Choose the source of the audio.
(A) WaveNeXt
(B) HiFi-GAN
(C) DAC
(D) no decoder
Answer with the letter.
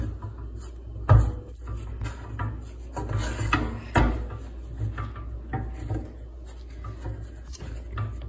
D